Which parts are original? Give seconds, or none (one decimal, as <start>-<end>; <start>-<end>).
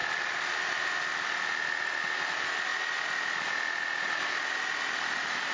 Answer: 0.0-5.5